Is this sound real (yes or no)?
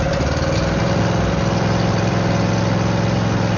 yes